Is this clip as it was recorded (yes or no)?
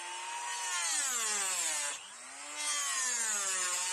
yes